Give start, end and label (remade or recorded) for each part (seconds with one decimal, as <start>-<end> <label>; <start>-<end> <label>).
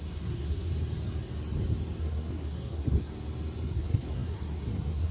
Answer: 0.0-0.7 remade; 0.7-2.0 recorded; 2.0-3.1 remade; 3.1-3.7 recorded; 3.7-5.1 remade